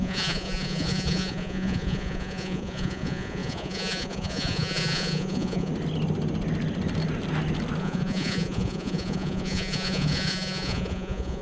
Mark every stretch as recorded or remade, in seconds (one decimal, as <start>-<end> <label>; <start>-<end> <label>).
0.0-5.7 remade; 5.7-7.8 recorded; 7.8-11.4 remade